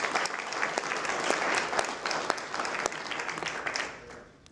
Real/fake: real